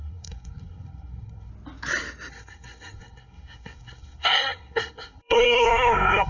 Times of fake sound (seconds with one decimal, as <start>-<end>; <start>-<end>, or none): 0.0-1.5; 2.3-6.3